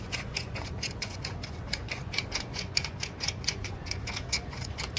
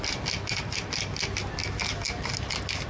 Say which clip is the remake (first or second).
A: first